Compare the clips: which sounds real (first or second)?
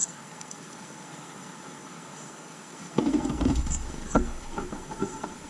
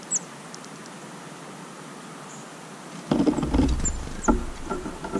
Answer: second